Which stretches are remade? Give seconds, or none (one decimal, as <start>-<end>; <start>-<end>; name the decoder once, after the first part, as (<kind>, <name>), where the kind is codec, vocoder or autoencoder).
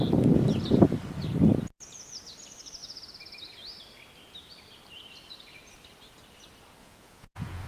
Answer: 6.8-7.7 (vocoder, Vocos)